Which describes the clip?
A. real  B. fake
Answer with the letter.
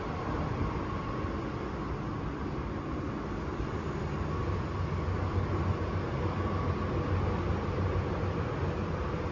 A